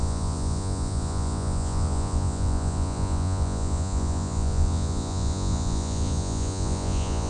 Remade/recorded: remade